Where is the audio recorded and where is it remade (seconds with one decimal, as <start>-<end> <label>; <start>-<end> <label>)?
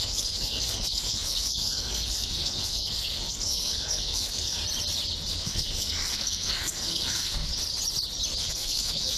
0.0-4.6 remade; 4.6-5.3 recorded; 5.3-7.5 remade; 7.5-8.4 recorded; 8.4-9.2 remade